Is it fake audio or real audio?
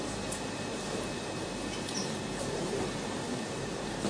fake